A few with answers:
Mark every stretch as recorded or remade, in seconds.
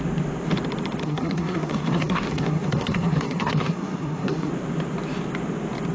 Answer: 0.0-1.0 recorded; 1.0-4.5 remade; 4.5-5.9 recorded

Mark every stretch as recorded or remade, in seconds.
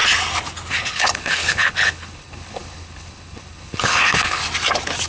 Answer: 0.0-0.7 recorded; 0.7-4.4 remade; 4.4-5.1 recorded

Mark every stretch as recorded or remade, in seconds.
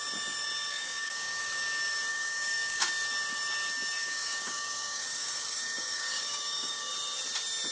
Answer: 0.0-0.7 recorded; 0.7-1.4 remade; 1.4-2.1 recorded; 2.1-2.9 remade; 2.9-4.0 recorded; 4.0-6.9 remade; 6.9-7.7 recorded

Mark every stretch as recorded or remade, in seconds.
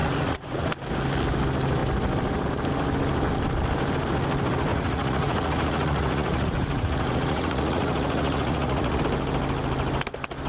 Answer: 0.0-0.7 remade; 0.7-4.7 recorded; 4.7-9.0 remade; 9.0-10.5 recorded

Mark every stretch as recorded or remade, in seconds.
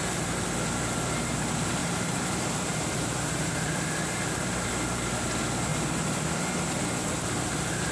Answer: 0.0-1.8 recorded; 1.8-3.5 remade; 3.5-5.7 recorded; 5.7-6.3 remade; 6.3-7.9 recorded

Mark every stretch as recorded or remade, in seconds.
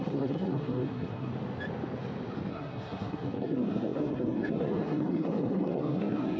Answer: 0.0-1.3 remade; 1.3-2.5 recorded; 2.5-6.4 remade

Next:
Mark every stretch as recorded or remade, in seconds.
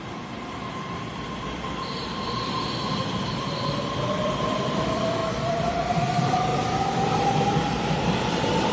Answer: 0.0-5.2 remade; 5.2-5.7 recorded; 5.7-6.5 remade; 6.5-8.1 recorded; 8.1-8.7 remade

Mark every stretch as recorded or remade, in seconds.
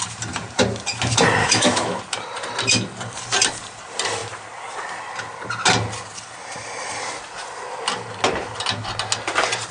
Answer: 0.0-1.4 recorded; 1.4-2.0 remade; 2.0-9.7 recorded